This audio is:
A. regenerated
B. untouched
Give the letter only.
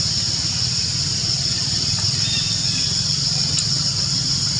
B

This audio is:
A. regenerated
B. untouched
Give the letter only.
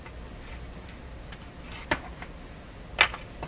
B